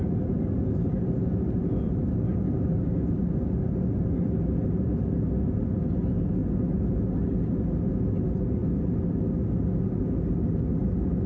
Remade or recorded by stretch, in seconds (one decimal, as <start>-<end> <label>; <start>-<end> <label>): 0.0-11.3 recorded